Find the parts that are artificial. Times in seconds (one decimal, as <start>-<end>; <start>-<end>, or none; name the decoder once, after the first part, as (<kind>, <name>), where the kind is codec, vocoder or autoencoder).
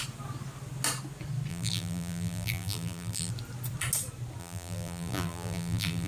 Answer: 1.5-3.3 (vocoder, BigVGAN v2); 4.4-6.1